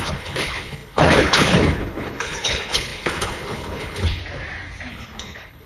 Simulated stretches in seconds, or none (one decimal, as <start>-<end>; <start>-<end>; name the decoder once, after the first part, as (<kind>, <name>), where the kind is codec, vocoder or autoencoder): 0.0-4.2 (codec, HILCodec); 4.9-5.7